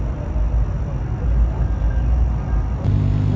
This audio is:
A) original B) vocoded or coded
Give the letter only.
A